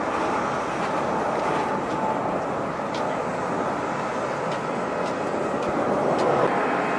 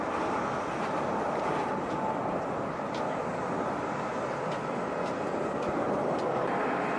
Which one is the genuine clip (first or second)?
first